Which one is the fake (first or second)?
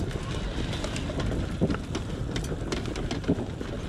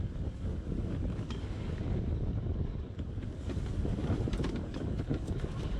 second